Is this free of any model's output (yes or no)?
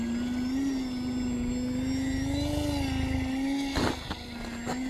yes